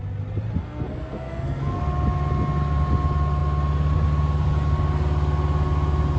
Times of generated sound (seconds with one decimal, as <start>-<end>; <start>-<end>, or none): 0.6-1.8